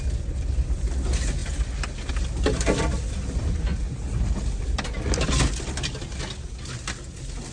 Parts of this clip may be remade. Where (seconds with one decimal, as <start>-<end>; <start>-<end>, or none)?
none